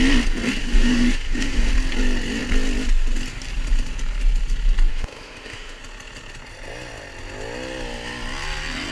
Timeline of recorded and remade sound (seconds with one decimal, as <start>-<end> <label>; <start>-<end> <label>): 0.0-0.6 recorded; 0.6-1.7 remade; 1.7-4.9 recorded; 4.9-5.8 remade; 5.8-8.9 recorded